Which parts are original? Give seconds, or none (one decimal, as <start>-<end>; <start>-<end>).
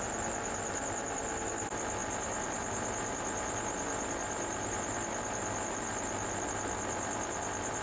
0.0-7.8